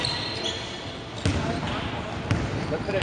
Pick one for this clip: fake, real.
real